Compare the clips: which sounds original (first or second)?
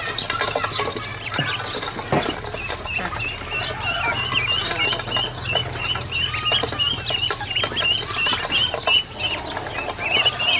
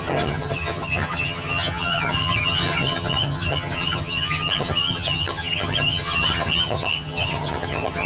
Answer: first